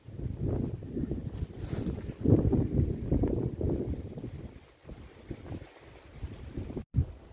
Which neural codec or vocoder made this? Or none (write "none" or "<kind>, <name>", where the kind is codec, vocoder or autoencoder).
none